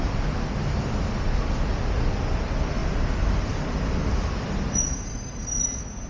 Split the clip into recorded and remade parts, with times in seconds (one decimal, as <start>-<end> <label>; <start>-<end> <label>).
0.0-6.1 recorded